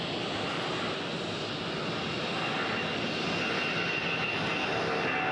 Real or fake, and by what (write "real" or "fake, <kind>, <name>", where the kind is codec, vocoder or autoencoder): real